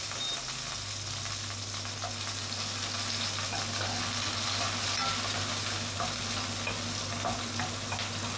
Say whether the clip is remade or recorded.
recorded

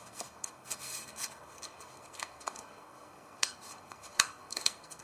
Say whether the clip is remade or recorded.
remade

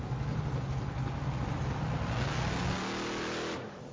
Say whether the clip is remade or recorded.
recorded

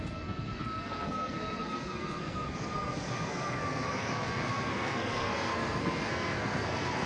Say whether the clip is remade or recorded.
remade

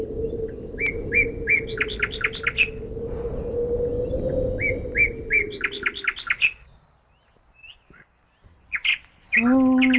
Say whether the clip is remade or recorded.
recorded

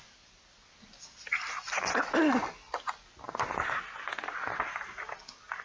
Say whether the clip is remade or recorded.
recorded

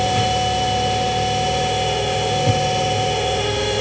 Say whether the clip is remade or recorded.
remade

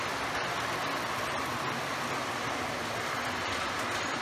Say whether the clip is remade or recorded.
recorded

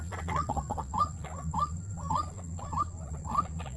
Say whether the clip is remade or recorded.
remade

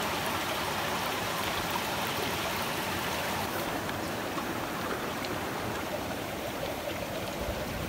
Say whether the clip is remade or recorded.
remade